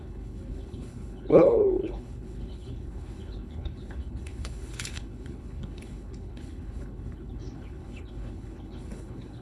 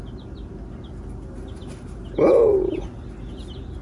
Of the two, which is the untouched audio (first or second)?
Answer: second